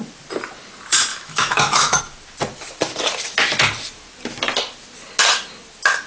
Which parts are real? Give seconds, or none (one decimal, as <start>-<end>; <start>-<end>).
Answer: 0.0-1.1; 2.0-6.1